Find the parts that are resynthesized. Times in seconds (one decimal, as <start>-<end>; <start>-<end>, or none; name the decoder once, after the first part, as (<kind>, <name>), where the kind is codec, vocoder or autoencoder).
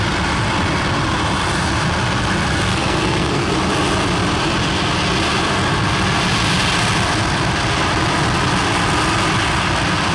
2.7-3.5 (codec, SNAC)